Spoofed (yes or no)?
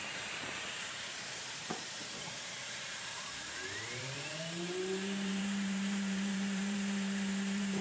yes